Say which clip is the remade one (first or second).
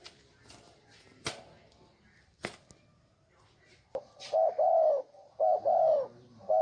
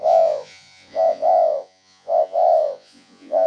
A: second